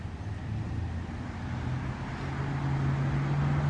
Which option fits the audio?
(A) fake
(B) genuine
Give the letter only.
B